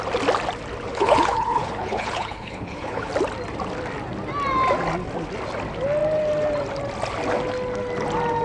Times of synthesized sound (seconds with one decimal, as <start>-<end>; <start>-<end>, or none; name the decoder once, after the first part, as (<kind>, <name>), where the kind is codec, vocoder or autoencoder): 0.9-3.1 (codec, HILCodec)